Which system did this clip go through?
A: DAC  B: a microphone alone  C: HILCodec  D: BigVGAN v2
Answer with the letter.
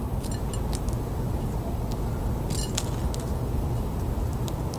B